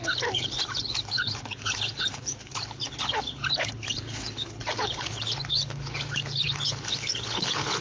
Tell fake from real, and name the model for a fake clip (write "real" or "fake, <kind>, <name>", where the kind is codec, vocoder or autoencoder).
fake, codec, HILCodec